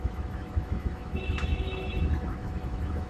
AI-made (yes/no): yes